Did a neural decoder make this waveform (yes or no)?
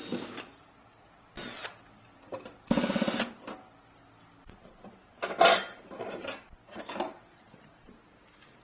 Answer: no